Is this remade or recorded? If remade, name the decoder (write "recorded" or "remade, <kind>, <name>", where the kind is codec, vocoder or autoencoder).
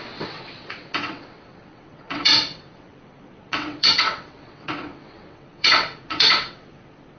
remade, vocoder, WaveNeXt